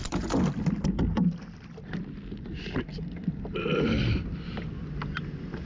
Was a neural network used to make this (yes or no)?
no